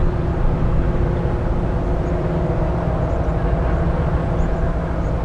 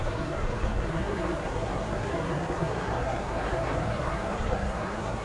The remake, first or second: second